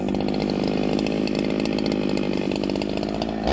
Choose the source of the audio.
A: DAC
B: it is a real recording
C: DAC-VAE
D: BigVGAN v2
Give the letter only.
B